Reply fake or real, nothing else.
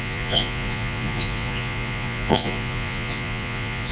fake